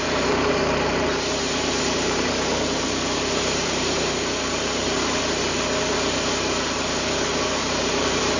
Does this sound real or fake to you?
fake